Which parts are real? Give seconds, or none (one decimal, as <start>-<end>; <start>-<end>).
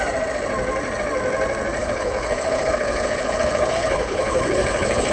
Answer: 0.0-1.8